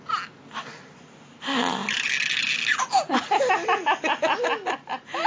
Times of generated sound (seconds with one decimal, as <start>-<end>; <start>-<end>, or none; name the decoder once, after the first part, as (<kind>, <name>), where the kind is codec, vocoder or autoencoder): none